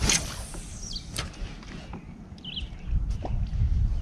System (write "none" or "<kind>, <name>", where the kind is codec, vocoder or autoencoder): none